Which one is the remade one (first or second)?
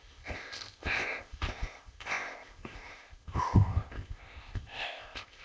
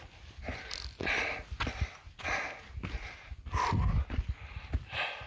first